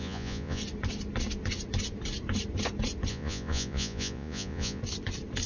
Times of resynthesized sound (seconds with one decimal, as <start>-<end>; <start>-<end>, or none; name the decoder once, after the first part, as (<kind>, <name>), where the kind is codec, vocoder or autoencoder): 0.0-0.6 (vocoder, Vocos); 3.1-4.8